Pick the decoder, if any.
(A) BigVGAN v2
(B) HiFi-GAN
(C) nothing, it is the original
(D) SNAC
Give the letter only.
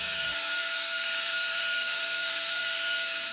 D